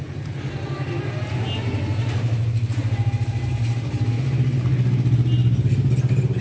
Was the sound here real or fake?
real